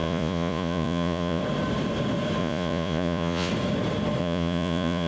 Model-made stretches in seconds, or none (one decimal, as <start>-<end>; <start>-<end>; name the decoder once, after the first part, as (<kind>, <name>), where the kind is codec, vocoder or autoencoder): 0.0-1.4 (vocoder, Vocos); 2.4-3.5; 4.2-5.1